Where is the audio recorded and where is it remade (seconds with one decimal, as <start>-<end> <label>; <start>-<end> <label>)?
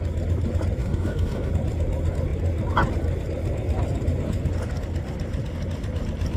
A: 0.0-0.8 recorded; 0.8-1.5 remade; 1.5-6.4 recorded